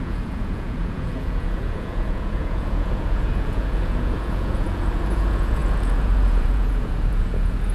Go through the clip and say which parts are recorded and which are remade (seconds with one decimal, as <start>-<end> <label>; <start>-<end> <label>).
0.0-7.7 remade